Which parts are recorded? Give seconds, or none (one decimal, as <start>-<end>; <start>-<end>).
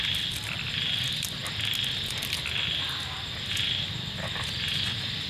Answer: 0.0-5.3